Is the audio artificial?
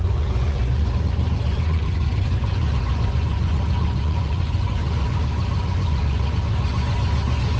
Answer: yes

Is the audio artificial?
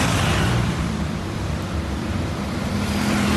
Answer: yes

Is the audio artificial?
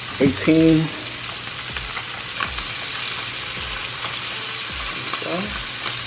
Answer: no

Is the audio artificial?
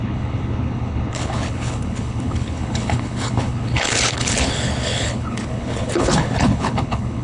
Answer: yes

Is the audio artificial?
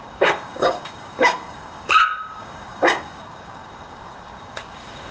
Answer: yes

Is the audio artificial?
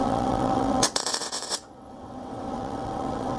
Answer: yes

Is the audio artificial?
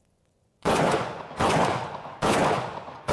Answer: yes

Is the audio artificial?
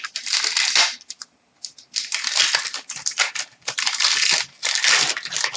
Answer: no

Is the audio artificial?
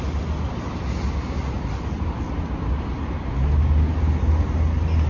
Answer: no